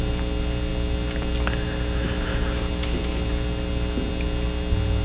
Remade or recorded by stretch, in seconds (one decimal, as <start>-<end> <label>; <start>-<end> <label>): 0.0-5.0 recorded